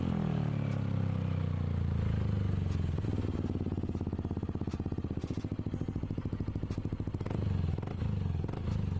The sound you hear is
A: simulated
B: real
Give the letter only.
B